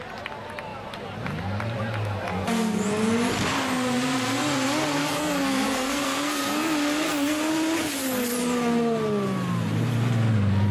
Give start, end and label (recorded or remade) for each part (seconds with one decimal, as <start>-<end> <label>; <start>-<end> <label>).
0.0-5.0 recorded; 5.0-7.5 remade; 7.5-10.7 recorded